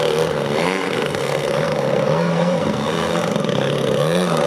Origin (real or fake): fake